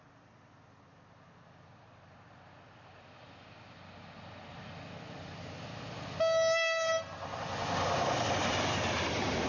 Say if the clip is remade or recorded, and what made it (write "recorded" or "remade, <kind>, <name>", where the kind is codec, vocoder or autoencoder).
recorded